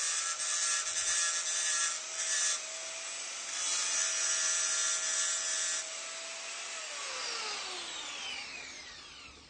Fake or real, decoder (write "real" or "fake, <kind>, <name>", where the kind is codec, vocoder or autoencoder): real